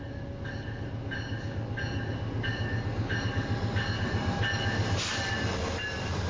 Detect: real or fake real